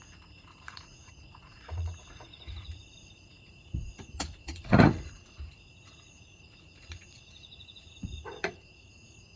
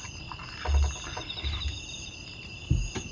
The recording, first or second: second